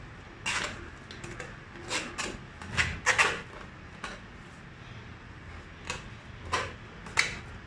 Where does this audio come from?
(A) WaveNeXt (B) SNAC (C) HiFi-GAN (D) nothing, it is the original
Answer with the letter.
D